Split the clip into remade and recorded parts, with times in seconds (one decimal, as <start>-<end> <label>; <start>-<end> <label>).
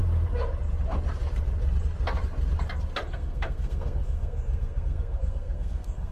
0.0-3.1 recorded; 3.1-6.1 remade